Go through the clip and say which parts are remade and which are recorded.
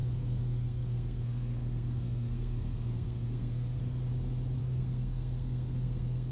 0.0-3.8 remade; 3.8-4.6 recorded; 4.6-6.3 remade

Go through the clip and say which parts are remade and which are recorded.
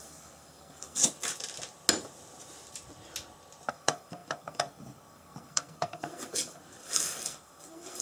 0.0-1.0 remade; 1.0-3.7 recorded; 3.7-8.0 remade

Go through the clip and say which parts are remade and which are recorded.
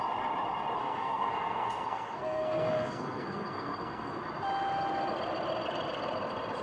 0.0-0.8 recorded; 0.8-4.2 remade; 4.2-6.6 recorded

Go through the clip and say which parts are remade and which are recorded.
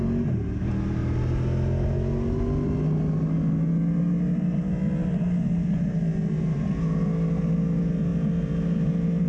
0.0-9.3 recorded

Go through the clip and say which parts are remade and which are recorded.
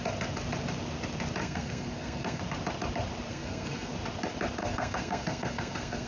0.0-1.4 recorded; 1.4-2.4 remade; 2.4-3.3 recorded; 3.3-3.9 remade; 3.9-4.6 recorded; 4.6-6.1 remade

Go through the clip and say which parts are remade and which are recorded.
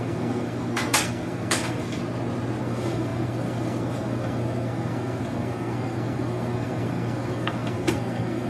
0.0-2.0 remade; 2.0-2.6 recorded; 2.6-8.5 remade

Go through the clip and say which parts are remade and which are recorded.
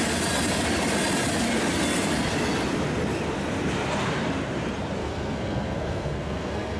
0.0-5.0 recorded; 5.0-6.8 remade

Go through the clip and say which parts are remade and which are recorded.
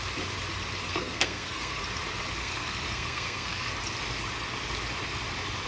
0.0-0.9 recorded; 0.9-1.8 remade; 1.8-2.4 recorded; 2.4-3.7 remade; 3.7-5.7 recorded